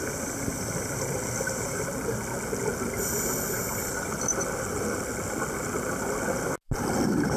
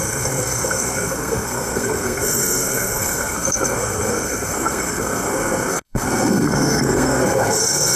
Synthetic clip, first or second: second